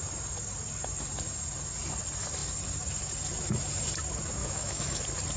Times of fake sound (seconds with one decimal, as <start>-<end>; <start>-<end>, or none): 4.4-5.0